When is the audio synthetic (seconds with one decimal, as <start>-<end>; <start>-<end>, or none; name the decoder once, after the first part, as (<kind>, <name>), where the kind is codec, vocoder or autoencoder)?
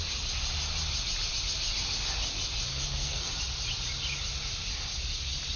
2.7-3.3 (codec, SNAC)